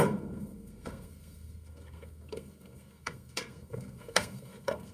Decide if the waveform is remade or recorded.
remade